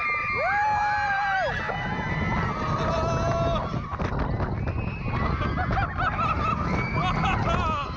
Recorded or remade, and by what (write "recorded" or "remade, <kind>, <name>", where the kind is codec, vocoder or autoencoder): recorded